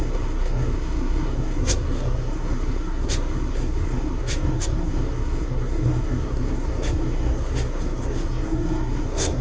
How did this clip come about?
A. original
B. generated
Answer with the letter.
B